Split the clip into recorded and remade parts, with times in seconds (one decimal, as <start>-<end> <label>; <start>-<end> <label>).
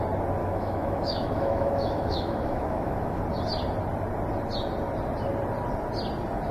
0.0-0.4 recorded; 0.4-3.2 remade; 3.2-6.5 recorded